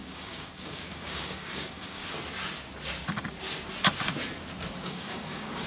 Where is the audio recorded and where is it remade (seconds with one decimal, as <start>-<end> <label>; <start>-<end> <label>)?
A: 0.0-2.0 remade; 2.0-4.7 recorded; 4.7-5.7 remade